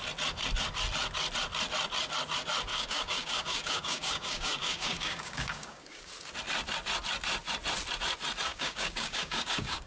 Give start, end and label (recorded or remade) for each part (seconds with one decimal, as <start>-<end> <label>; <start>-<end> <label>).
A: 0.0-2.7 recorded; 2.7-6.1 remade; 6.1-8.5 recorded; 8.5-9.9 remade

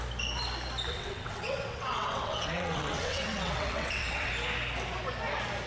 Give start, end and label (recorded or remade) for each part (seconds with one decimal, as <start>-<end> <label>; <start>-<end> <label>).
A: 0.0-0.9 recorded; 0.9-4.3 remade; 4.3-5.7 recorded

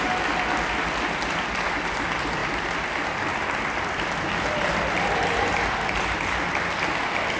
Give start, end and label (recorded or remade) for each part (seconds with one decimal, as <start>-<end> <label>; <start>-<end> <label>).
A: 0.0-7.4 recorded

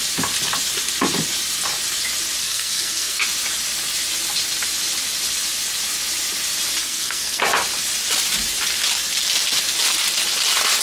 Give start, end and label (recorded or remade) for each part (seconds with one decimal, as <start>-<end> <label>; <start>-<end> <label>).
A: 0.0-2.4 recorded; 2.4-3.2 remade; 3.2-6.8 recorded; 6.8-7.4 remade; 7.4-10.8 recorded

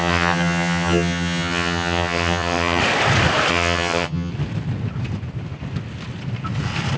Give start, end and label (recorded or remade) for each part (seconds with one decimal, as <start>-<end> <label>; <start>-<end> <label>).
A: 0.0-2.8 remade; 2.8-3.5 recorded; 3.5-4.3 remade; 4.3-7.0 recorded